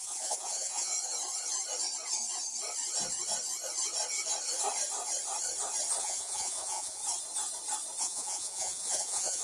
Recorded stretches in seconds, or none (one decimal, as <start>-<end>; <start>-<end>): 0.9-6.0; 7.0-8.0